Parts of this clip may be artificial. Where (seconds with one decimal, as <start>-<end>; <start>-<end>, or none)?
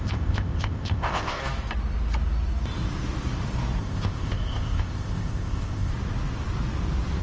0.0-1.4; 3.8-5.9